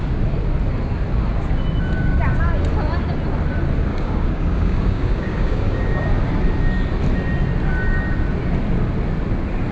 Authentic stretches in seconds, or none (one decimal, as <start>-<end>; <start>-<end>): 0.0-3.9; 6.0-9.7